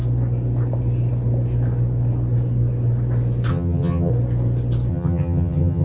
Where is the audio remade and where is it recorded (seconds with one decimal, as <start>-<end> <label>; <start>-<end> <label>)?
0.0-3.5 recorded; 3.5-4.1 remade; 4.1-4.9 recorded; 4.9-5.8 remade